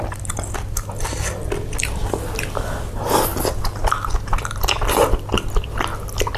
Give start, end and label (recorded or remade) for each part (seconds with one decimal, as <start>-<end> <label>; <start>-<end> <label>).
0.0-6.4 recorded